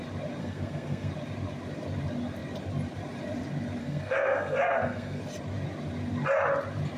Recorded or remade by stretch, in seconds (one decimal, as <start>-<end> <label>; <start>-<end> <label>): 0.0-0.4 recorded; 0.4-1.1 remade; 1.1-3.8 recorded; 3.8-5.2 remade; 5.2-7.0 recorded